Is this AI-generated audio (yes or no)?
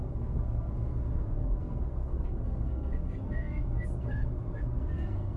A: yes